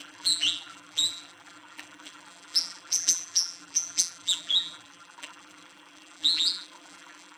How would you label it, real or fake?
fake